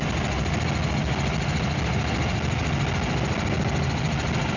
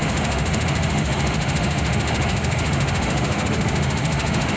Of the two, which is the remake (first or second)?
second